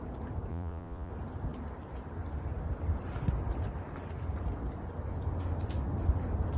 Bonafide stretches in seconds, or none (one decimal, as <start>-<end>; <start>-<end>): 0.0-0.5; 1.1-6.6